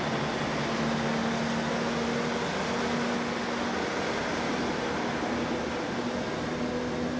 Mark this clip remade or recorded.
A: recorded